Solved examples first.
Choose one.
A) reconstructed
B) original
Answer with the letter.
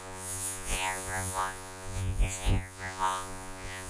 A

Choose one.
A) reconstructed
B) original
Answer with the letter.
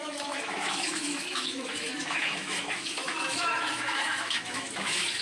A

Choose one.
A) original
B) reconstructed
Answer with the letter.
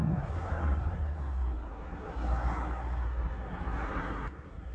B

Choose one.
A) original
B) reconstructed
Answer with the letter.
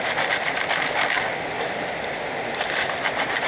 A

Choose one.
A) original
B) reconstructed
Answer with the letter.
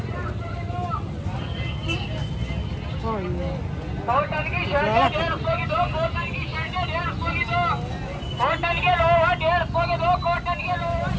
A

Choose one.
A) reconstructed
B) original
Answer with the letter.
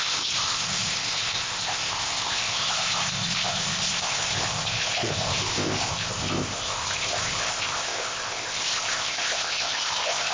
A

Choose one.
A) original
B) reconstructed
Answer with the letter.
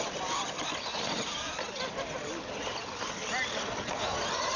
A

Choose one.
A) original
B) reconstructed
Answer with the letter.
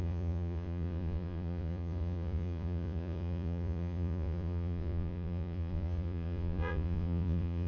B